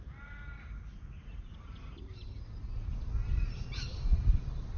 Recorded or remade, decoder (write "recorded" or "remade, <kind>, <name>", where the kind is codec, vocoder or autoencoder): recorded